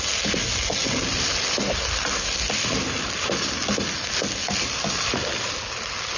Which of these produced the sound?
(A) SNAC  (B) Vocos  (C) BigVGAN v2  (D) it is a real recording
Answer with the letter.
D